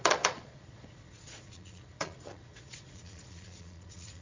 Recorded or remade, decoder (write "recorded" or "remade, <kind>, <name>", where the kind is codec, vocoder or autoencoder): remade, vocoder, Vocos